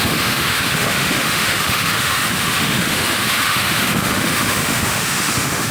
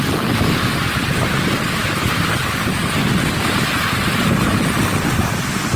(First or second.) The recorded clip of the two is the second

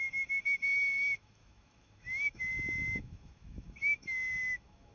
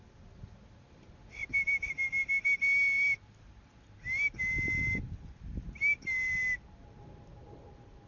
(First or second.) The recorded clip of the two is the second